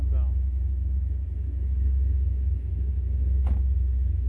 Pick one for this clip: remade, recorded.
remade